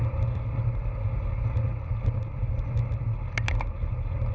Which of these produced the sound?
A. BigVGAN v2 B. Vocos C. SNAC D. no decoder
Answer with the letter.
D